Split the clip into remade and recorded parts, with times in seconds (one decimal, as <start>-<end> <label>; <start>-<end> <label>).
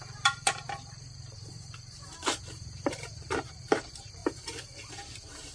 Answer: 0.0-4.2 remade; 4.2-4.9 recorded; 4.9-5.5 remade